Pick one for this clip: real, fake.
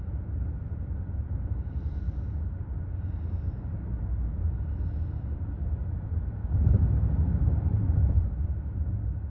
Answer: real